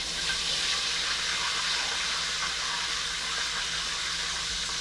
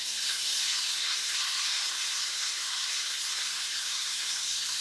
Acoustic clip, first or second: first